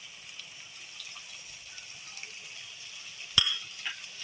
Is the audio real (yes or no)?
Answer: yes